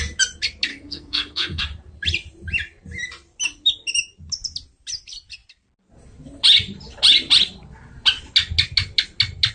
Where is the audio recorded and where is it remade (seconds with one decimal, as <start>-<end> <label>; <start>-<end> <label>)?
0.0-0.7 recorded; 0.7-1.6 remade; 1.6-9.5 recorded